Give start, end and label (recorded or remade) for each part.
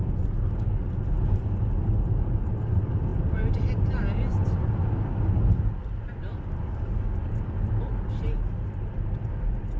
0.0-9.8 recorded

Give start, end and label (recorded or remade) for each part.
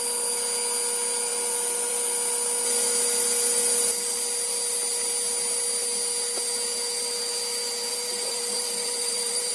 0.0-7.9 recorded; 7.9-9.5 remade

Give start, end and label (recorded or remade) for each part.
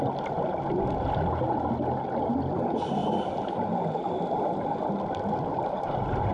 0.0-6.3 recorded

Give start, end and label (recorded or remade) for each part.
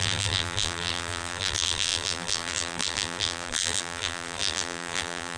0.0-5.4 remade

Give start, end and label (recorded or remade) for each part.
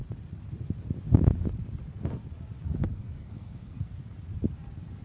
0.0-2.9 recorded; 2.9-4.0 remade; 4.0-5.0 recorded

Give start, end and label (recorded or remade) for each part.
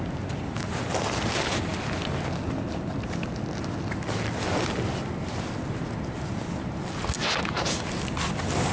0.0-8.7 recorded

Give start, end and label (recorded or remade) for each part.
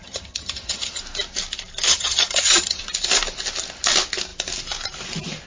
0.0-1.0 remade; 1.0-1.9 recorded; 1.9-2.8 remade; 2.8-5.5 recorded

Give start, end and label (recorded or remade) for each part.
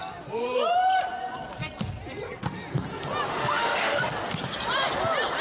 0.0-3.3 recorded; 3.3-4.0 remade; 4.0-5.4 recorded